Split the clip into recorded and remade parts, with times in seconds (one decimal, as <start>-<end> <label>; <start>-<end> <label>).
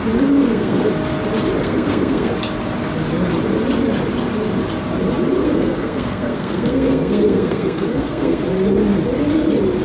0.0-0.4 recorded; 0.4-0.9 remade; 0.9-1.6 recorded; 1.6-2.3 remade; 2.3-5.4 recorded; 5.4-8.4 remade; 8.4-9.8 recorded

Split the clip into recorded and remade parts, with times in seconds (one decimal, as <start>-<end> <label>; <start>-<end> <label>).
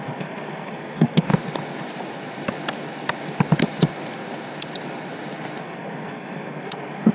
0.0-1.3 remade; 1.3-5.6 recorded; 5.6-7.1 remade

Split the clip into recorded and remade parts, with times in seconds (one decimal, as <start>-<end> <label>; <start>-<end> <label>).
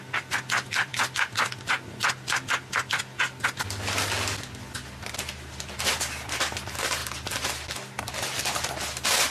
0.0-9.3 recorded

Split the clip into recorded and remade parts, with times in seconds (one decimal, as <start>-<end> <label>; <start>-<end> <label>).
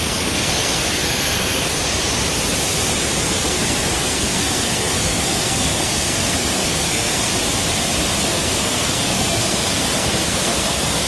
0.0-1.7 remade; 1.7-3.2 recorded; 3.2-7.3 remade; 7.3-8.2 recorded; 8.2-11.1 remade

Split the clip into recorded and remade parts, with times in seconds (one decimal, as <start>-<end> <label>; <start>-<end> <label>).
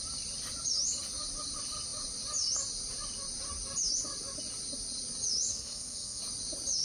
0.0-5.5 recorded; 5.5-6.2 remade; 6.2-6.8 recorded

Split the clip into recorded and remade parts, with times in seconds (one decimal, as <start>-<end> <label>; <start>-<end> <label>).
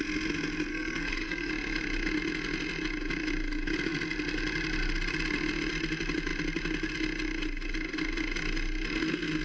0.0-0.7 recorded; 0.7-1.5 remade; 1.5-9.4 recorded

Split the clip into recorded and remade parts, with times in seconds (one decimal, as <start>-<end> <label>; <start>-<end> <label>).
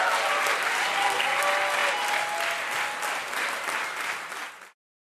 0.0-0.9 recorded; 0.9-1.4 remade; 1.4-5.0 recorded